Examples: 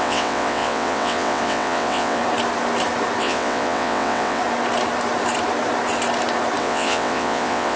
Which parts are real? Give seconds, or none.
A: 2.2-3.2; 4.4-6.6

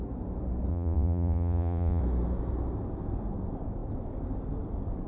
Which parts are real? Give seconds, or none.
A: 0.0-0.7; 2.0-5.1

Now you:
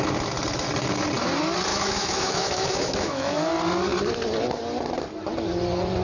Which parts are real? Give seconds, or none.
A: 0.0-1.7; 3.5-6.0